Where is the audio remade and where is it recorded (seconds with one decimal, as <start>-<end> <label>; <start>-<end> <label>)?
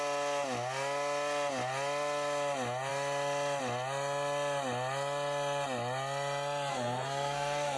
0.0-6.7 recorded; 6.7-7.8 remade